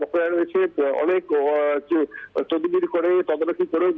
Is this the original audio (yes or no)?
yes